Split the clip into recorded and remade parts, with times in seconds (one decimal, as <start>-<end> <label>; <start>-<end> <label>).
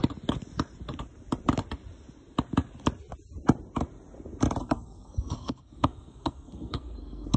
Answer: 0.0-4.6 recorded; 4.6-7.4 remade